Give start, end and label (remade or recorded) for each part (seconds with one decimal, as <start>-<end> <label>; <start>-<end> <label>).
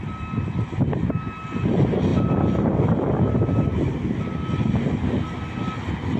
0.0-6.2 recorded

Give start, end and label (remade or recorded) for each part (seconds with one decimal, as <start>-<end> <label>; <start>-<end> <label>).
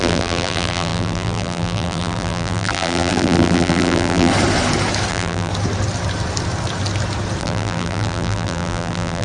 0.0-4.3 remade; 4.3-5.1 recorded; 5.1-5.5 remade; 5.5-7.4 recorded; 7.4-9.2 remade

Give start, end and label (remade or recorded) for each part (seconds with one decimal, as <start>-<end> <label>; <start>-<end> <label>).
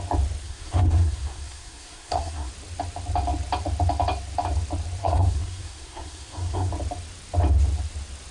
0.0-0.4 recorded; 0.4-2.5 remade; 2.5-5.0 recorded; 5.0-6.7 remade; 6.7-8.3 recorded